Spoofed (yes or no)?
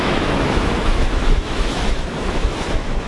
yes